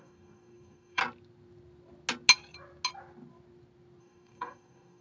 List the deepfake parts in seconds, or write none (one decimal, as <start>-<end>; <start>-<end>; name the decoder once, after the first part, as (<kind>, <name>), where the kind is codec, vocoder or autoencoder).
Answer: 0.0-1.0 (codec, DAC); 4.0-5.0